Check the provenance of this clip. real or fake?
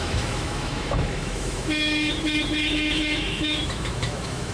fake